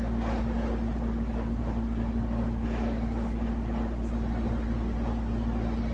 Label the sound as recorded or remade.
recorded